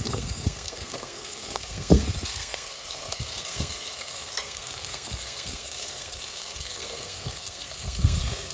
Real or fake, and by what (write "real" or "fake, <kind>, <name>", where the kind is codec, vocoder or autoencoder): fake, codec, SNAC